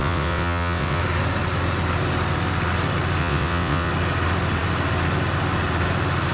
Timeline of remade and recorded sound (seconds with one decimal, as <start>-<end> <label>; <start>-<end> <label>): 0.0-1.0 remade; 1.0-3.2 recorded; 3.2-3.9 remade; 3.9-6.3 recorded